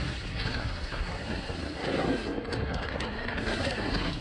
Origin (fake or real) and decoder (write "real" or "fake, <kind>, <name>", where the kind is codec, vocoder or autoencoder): fake, codec, SNAC